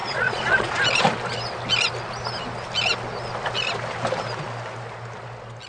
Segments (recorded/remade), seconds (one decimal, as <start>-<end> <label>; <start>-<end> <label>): 0.0-0.8 remade; 0.8-5.7 recorded